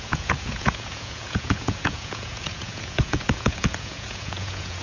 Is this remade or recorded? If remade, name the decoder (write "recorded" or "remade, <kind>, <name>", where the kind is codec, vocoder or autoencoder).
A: remade, vocoder, Vocos